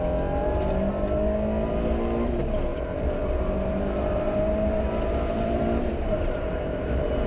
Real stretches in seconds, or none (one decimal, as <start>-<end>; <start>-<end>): 0.0-0.4; 0.9-2.7